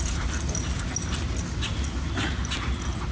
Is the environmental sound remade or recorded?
recorded